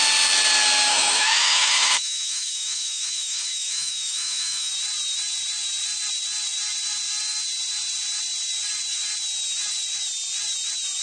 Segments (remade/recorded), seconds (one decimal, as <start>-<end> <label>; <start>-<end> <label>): 0.0-0.9 recorded; 0.9-4.7 remade; 4.7-11.0 recorded